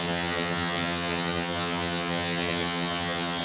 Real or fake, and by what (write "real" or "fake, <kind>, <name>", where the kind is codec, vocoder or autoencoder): fake, vocoder, HiFi-GAN